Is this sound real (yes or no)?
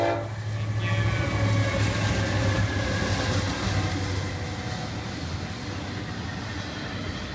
yes